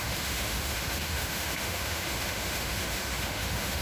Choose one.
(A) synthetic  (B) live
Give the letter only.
A